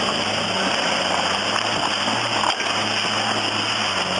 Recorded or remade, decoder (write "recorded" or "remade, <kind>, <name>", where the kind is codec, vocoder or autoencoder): recorded